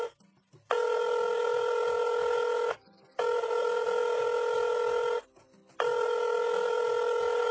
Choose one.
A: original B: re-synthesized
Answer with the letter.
A